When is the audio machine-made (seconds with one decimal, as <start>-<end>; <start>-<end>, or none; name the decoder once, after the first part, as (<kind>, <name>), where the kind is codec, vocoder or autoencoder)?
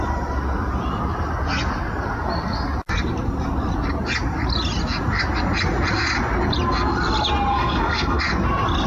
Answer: 7.5-8.2 (codec, SNAC)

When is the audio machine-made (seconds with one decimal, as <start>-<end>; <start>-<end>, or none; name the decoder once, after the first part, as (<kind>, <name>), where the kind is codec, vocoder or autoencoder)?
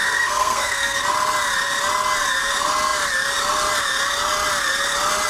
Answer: 0.0-1.0 (codec, SNAC)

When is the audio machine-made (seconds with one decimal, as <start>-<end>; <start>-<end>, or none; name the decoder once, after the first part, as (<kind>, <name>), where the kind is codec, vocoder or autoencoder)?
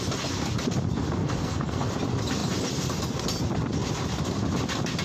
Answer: 1.2-1.9 (codec, SNAC)